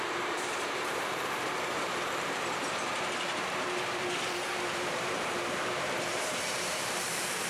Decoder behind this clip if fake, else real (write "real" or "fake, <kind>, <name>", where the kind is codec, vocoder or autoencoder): fake, vocoder, BigVGAN v2